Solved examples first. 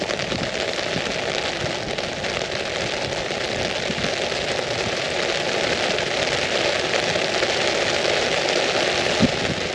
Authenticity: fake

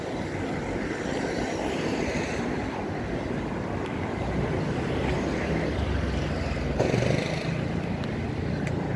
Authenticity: real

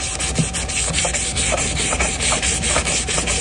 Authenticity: real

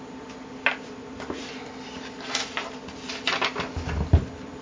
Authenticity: real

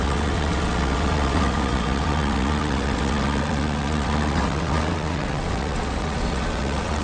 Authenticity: fake